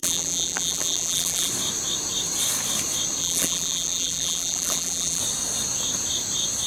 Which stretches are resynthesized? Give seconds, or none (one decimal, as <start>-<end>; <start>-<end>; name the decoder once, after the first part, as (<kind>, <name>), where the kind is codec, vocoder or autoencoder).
0.0-1.5 (vocoder, BigVGAN v2); 3.2-5.2